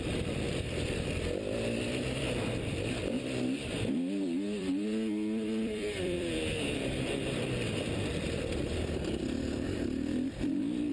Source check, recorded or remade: remade